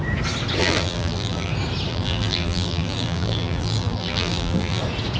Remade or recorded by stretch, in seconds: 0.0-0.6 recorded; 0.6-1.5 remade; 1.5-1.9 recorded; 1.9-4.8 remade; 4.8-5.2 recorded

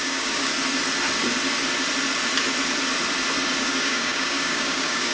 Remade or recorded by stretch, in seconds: 0.0-0.5 remade; 0.5-3.6 recorded; 3.6-5.1 remade

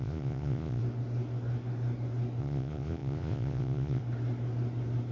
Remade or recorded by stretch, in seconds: 0.0-0.8 remade; 0.8-2.4 recorded; 2.4-4.0 remade; 4.0-5.1 recorded

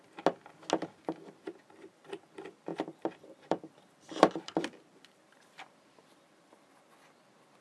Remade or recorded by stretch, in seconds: 0.0-0.9 recorded; 0.9-2.1 remade; 2.1-2.7 recorded; 2.7-6.8 remade; 6.8-7.6 recorded

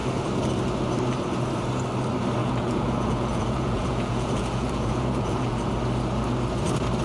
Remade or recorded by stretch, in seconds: 0.0-2.4 recorded; 2.4-5.7 remade; 5.7-7.0 recorded

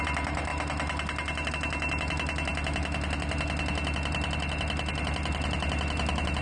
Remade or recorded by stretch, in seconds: 0.0-6.4 recorded